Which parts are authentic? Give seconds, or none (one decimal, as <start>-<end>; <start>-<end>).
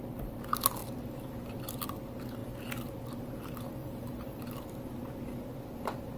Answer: 0.0-3.8; 4.4-6.2